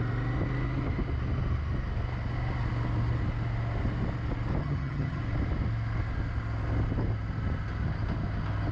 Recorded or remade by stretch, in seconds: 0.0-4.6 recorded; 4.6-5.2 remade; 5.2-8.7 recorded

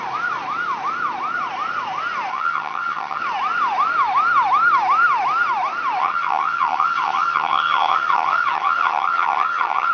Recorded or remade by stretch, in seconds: 0.0-2.3 recorded; 2.3-3.2 remade; 3.2-6.0 recorded; 6.0-9.9 remade

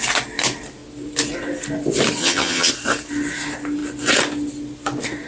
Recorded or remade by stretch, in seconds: 0.0-2.2 recorded; 2.2-2.7 remade; 2.7-5.3 recorded

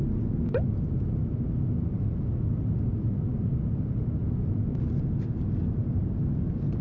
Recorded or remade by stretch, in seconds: 0.0-6.8 recorded

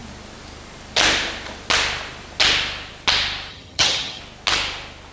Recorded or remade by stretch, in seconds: 0.0-3.5 recorded; 3.5-4.2 remade; 4.2-5.1 recorded

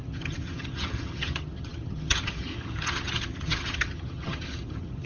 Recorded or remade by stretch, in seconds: 0.0-5.1 remade